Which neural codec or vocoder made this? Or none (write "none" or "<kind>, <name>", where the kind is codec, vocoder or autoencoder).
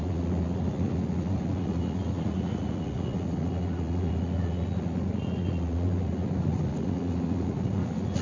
vocoder, Vocos